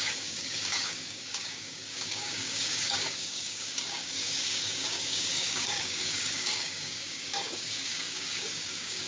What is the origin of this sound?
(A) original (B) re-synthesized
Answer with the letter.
B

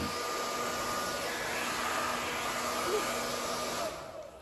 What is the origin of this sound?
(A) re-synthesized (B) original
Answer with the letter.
B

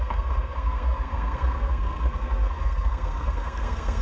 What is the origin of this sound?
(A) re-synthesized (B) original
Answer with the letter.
A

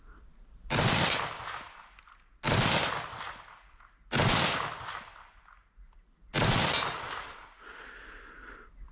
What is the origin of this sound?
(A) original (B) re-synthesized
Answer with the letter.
A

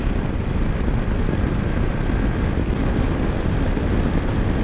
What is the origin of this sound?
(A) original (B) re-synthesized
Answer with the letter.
A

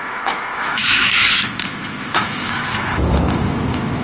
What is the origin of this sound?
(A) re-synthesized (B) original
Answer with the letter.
A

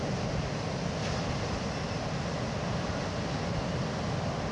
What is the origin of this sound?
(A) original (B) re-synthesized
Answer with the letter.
A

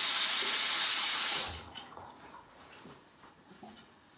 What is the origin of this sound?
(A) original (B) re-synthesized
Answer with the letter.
B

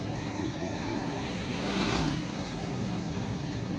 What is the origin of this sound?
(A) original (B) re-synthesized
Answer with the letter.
B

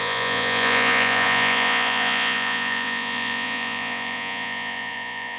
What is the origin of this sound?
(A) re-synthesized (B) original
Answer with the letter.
A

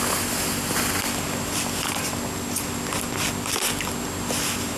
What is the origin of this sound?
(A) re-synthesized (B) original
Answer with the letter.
B